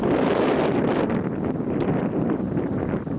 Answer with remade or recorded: recorded